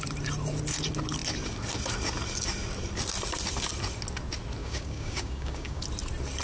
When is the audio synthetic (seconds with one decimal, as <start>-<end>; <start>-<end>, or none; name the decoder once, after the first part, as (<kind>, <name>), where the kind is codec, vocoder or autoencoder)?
4.6-5.8 (codec, DAC)